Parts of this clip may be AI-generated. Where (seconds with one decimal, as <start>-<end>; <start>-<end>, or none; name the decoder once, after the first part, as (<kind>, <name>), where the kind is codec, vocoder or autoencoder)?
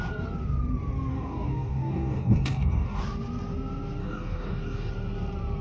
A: 1.1-3.0 (codec, DAC); 4.0-4.9